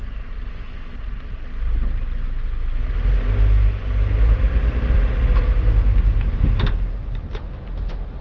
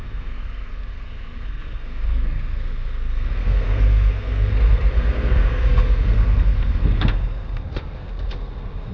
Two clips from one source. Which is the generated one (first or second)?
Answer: second